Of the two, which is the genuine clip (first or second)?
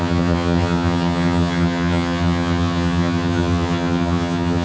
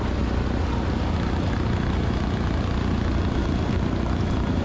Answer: second